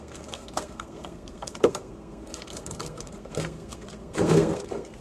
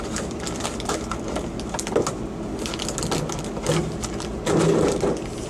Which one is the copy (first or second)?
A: first